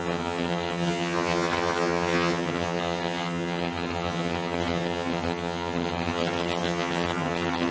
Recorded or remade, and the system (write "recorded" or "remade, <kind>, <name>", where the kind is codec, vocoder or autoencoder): remade, vocoder, HiFi-GAN